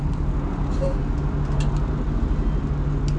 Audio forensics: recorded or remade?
recorded